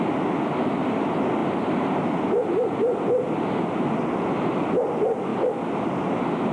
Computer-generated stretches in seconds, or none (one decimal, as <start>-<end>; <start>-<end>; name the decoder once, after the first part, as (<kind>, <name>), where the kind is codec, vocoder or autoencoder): none

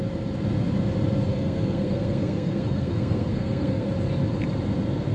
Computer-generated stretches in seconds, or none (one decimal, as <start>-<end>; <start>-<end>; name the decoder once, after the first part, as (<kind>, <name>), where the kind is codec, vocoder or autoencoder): 1.3-3.9 (codec, SNAC)

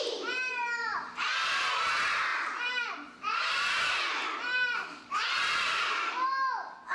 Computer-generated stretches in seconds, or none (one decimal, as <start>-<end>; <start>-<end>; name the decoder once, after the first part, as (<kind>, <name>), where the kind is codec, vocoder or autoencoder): 2.3-6.1 (vocoder, BigVGAN v2)

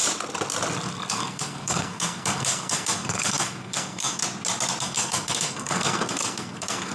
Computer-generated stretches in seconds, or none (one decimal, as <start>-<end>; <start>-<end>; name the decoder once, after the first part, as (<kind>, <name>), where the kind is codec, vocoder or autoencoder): 1.1-4.2 (codec, SNAC); 4.8-6.9

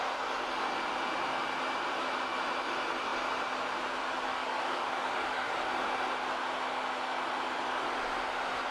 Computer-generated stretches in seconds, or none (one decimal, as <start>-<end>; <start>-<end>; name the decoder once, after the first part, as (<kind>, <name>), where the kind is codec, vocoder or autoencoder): 4.3-5.7 (codec, DAC)

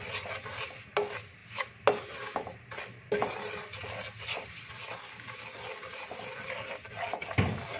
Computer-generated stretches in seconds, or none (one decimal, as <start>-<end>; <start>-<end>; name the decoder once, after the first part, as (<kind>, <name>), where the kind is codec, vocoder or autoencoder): none

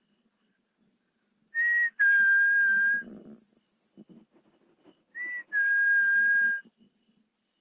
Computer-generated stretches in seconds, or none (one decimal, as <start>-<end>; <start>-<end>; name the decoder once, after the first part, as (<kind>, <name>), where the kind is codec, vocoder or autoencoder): none

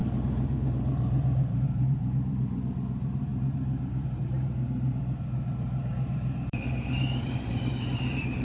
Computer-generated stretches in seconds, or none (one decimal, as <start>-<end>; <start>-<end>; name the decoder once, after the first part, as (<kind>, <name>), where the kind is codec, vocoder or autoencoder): 0.0-8.4 (vocoder, BigVGAN v2)